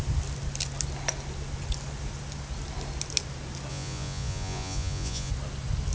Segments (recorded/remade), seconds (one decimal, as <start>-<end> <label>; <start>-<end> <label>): 0.0-3.7 recorded; 3.7-5.3 remade; 5.3-5.9 recorded